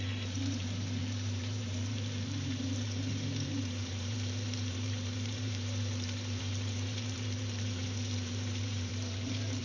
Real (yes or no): no